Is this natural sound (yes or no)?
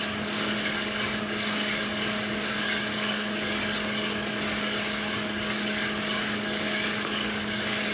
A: no